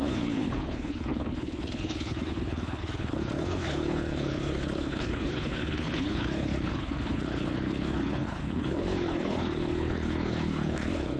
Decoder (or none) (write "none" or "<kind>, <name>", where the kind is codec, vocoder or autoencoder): codec, HILCodec